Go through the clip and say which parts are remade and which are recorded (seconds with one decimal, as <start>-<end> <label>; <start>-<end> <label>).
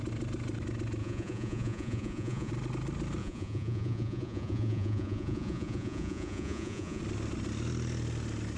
0.0-1.0 recorded; 1.0-2.5 remade; 2.5-3.2 recorded; 3.2-7.0 remade; 7.0-8.6 recorded